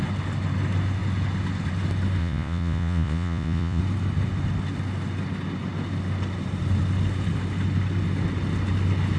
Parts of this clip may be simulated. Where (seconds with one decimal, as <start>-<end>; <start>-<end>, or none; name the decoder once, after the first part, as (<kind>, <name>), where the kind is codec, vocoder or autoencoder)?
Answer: 2.2-3.8 (vocoder, Vocos)